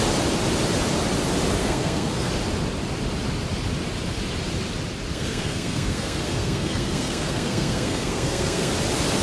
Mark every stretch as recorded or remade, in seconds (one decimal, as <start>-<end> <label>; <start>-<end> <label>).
0.0-1.6 recorded; 1.6-2.3 remade; 2.3-5.1 recorded; 5.1-8.7 remade; 8.7-9.2 recorded